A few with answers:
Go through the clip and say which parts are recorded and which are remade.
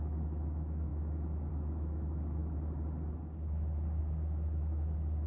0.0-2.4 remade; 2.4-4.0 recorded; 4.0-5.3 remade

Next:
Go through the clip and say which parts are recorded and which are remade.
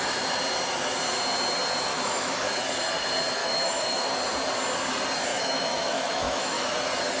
0.0-1.9 recorded; 1.9-2.6 remade; 2.6-3.4 recorded; 3.4-4.1 remade; 4.1-5.3 recorded; 5.3-6.6 remade; 6.6-7.2 recorded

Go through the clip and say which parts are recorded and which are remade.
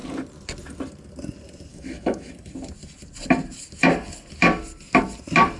0.0-1.7 recorded; 1.7-2.3 remade; 2.3-5.6 recorded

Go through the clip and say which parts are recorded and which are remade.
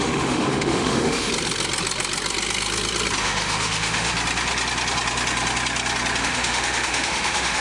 0.0-1.3 remade; 1.3-3.2 recorded; 3.2-4.1 remade; 4.1-6.2 recorded; 6.2-7.6 remade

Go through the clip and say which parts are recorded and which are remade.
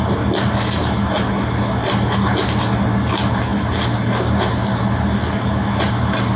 0.0-6.4 recorded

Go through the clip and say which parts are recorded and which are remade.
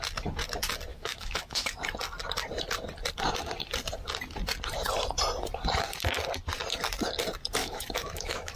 0.0-0.9 recorded; 0.9-1.8 remade; 1.8-7.6 recorded; 7.6-8.6 remade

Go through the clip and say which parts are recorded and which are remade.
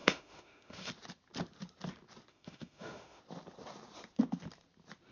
0.0-0.9 remade; 0.9-2.3 recorded; 2.3-3.2 remade; 3.2-5.1 recorded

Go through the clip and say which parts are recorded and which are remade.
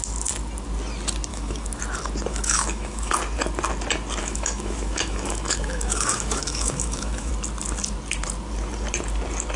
0.0-1.3 recorded; 1.3-1.8 remade; 1.8-2.3 recorded; 2.3-3.1 remade; 3.1-4.2 recorded; 4.2-7.3 remade; 7.3-9.6 recorded